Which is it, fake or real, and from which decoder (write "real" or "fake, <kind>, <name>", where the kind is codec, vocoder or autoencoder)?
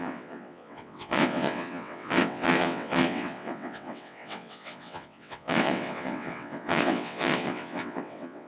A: fake, vocoder, WaveNeXt